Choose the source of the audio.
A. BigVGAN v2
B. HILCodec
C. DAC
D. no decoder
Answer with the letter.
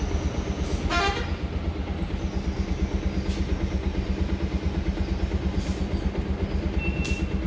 D